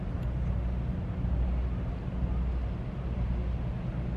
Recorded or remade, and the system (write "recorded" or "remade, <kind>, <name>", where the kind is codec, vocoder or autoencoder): recorded